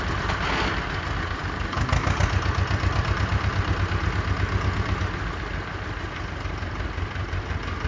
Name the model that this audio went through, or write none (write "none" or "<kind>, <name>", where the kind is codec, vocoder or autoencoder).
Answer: none